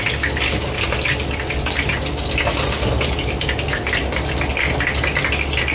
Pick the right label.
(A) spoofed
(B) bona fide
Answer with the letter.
B